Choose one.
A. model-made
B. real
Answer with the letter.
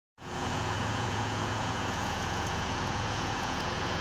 A